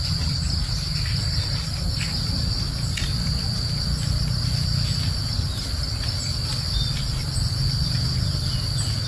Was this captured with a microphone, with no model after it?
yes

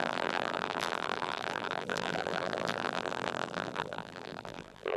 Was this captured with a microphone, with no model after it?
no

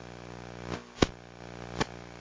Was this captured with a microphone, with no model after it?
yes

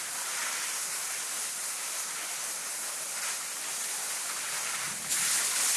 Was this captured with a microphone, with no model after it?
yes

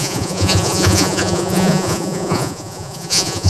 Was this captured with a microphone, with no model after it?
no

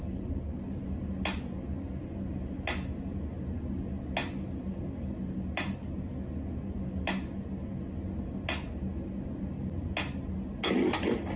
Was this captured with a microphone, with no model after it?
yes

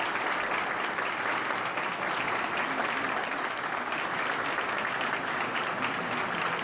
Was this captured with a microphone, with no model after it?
yes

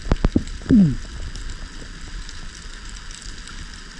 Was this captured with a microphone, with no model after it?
yes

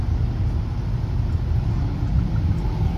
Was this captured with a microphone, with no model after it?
yes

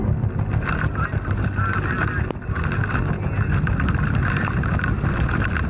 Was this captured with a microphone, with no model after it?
yes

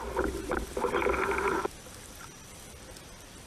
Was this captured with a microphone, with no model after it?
yes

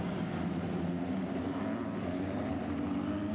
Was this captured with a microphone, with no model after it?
yes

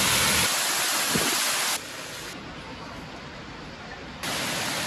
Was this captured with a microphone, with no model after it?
yes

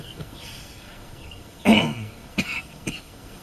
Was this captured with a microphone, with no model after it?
no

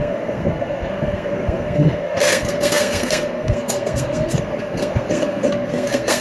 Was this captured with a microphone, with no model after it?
no